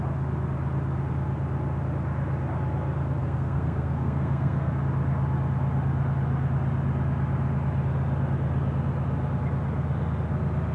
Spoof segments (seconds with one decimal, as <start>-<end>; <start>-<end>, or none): 3.2-4.8